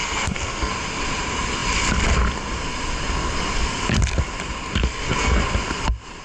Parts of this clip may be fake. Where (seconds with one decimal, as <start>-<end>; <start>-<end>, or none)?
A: 0.0-0.7; 4.8-5.4